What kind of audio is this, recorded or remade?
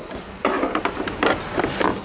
recorded